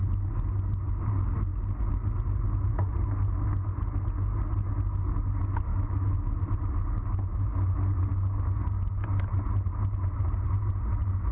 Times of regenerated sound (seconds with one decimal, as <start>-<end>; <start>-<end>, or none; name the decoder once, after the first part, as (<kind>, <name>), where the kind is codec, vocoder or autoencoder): 5.7-6.4 (autoencoder, DAC-VAE)